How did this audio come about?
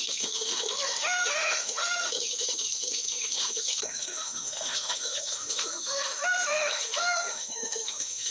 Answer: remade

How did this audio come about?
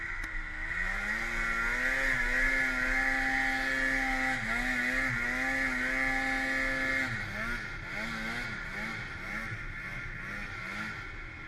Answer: recorded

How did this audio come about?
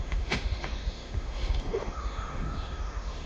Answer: remade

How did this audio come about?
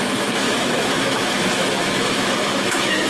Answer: remade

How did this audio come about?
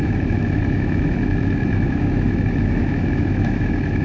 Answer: remade